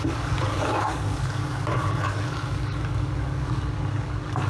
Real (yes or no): no